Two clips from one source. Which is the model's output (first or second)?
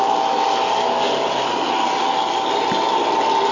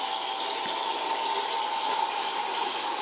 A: second